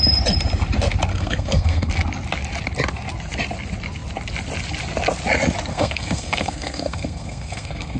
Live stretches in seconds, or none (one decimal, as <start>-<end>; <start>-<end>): 0.0-1.1; 1.9-5.7